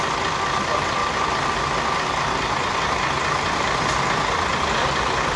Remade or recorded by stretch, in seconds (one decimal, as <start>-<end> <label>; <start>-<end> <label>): 0.0-5.4 recorded